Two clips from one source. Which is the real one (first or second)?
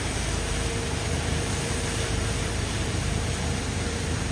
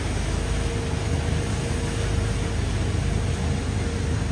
second